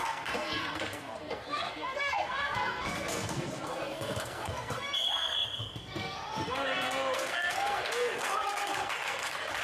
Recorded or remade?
remade